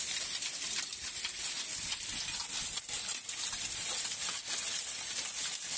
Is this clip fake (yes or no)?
no